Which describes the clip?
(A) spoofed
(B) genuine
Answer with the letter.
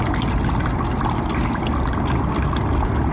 B